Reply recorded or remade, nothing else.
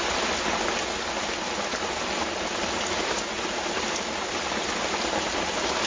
recorded